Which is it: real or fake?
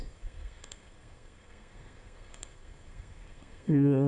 fake